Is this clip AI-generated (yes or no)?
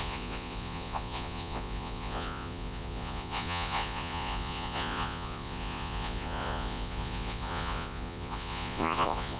yes